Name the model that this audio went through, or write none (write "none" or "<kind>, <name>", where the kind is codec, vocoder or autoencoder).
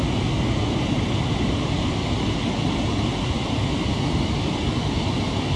none